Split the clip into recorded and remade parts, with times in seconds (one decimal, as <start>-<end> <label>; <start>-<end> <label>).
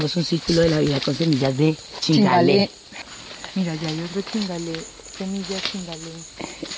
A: 0.0-6.8 recorded